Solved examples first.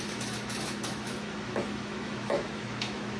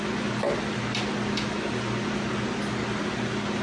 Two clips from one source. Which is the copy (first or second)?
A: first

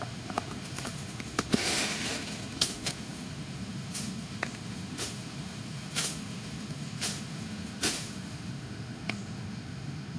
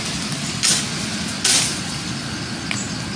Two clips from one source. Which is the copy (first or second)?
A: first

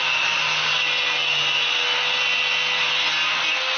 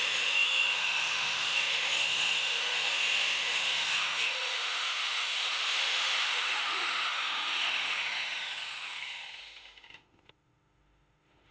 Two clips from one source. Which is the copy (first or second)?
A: second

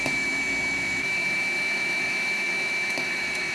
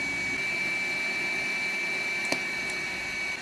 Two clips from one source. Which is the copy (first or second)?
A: first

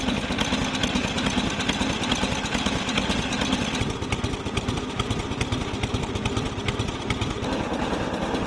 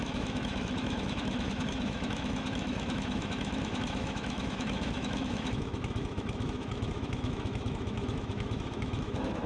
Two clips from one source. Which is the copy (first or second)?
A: second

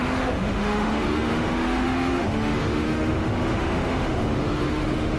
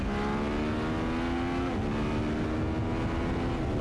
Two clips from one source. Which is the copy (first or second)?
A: first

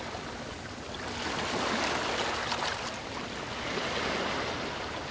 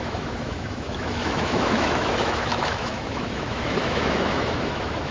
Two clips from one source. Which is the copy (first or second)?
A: second